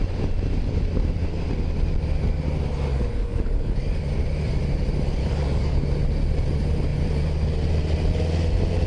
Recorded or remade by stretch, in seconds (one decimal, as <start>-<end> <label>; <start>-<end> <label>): 0.0-2.9 recorded; 2.9-4.0 remade; 4.0-5.2 recorded; 5.2-5.8 remade; 5.8-8.9 recorded